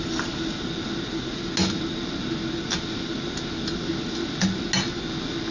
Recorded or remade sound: recorded